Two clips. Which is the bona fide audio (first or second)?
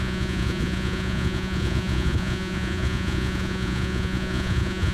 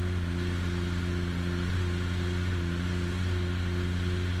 second